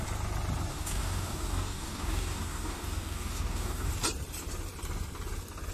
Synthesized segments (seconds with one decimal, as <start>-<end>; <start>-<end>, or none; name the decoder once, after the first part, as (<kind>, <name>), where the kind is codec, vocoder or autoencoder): 0.7-3.9 (codec, DAC)